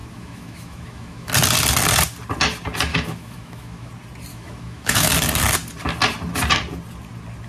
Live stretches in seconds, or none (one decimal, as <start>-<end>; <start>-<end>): 1.3-2.9; 3.9-4.3; 5.1-7.5